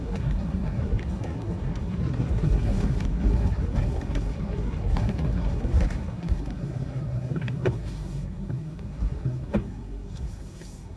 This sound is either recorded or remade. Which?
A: remade